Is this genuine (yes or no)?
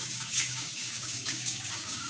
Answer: no